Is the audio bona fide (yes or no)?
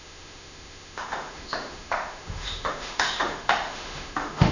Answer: no